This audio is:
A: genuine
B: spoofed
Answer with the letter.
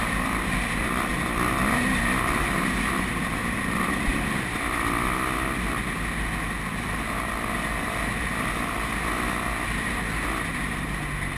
A